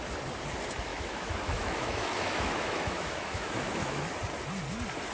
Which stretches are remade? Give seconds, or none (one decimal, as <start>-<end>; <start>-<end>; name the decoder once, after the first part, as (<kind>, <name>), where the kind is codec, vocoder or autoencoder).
0.9-4.0 (autoencoder, DAC-VAE)